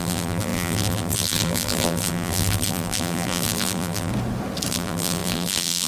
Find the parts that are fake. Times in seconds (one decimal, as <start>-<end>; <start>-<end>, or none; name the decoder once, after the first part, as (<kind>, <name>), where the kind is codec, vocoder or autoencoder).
0.0-4.1 (vocoder, BigVGAN v2); 4.7-5.9